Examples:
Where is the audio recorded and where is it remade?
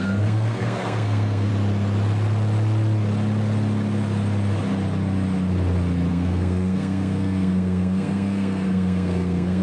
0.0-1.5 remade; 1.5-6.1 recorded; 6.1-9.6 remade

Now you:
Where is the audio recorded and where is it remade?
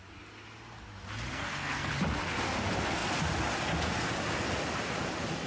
0.0-1.3 recorded; 1.3-1.9 remade; 1.9-5.5 recorded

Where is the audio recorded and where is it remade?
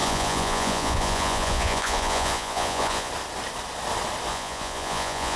0.0-3.1 remade; 3.1-4.3 recorded; 4.3-5.4 remade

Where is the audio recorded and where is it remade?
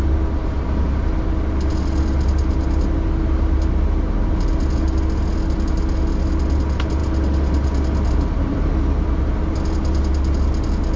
0.0-11.0 recorded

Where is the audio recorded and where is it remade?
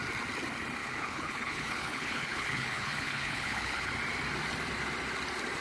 0.0-0.8 recorded; 0.8-3.9 remade; 3.9-5.6 recorded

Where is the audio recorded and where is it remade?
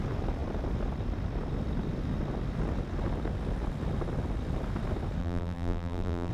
0.0-5.2 recorded; 5.2-6.3 remade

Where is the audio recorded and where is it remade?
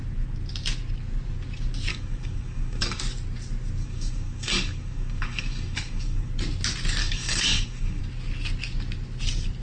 0.0-1.9 recorded; 1.9-3.0 remade; 3.0-3.8 recorded; 3.8-6.3 remade; 6.3-7.0 recorded; 7.0-8.0 remade; 8.0-9.6 recorded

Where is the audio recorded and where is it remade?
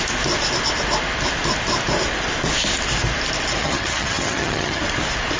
0.0-3.6 recorded; 3.6-4.8 remade; 4.8-5.4 recorded